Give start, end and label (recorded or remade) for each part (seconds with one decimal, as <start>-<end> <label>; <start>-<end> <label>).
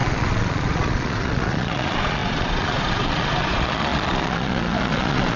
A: 0.0-5.4 remade